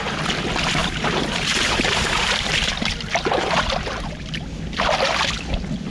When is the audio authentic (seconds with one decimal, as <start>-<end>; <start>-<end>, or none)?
0.0-0.8; 4.3-5.9

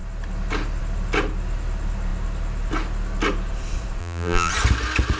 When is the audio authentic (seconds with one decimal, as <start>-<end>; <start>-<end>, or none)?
0.0-4.0; 4.5-5.2